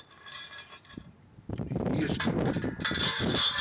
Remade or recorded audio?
remade